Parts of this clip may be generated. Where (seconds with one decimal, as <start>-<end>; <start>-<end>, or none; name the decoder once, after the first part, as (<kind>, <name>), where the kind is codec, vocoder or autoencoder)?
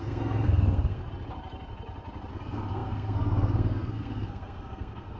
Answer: 0.0-1.0 (codec, SNAC); 2.3-5.2